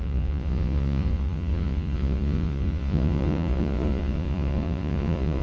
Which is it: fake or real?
fake